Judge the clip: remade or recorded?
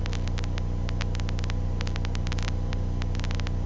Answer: recorded